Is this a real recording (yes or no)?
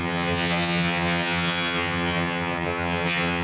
no